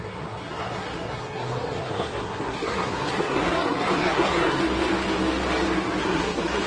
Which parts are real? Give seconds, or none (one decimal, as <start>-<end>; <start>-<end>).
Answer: 4.6-6.0